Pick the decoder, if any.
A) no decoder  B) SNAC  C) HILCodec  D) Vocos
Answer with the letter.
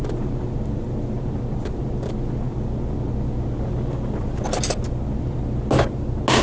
A